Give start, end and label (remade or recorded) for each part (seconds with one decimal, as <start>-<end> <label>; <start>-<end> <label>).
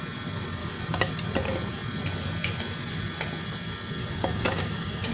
0.0-0.6 recorded; 0.6-1.1 remade; 1.1-4.0 recorded; 4.0-5.1 remade